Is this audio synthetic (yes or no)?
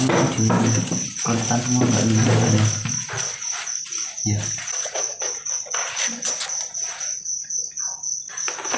no